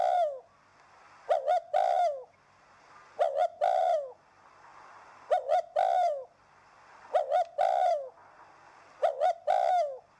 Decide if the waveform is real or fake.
real